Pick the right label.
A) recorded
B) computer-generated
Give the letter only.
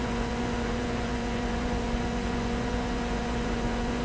B